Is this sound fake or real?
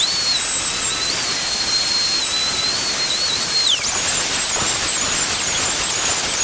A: real